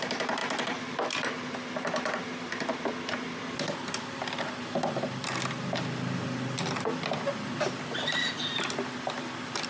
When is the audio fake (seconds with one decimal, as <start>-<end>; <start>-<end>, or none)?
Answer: none